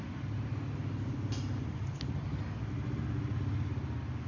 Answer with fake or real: real